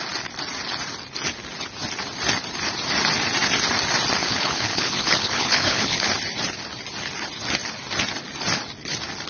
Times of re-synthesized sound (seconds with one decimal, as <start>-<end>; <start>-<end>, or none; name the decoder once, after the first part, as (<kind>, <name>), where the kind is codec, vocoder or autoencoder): 4.2-6.1 (codec, HILCodec)

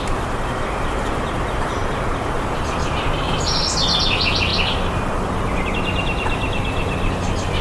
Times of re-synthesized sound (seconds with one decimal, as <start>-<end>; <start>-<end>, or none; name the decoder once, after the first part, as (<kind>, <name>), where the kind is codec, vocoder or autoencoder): none

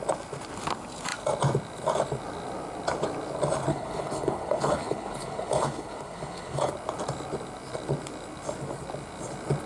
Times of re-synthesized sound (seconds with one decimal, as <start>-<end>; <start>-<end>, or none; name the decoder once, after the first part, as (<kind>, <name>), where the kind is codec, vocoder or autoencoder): 3.7-6.7 (codec, HILCodec)